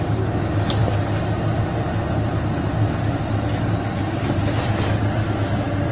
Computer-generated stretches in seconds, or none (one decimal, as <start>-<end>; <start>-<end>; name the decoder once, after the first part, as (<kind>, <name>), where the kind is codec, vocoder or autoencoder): none